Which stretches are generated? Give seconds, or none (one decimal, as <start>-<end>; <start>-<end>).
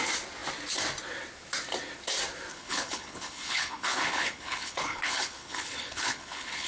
2.5-6.7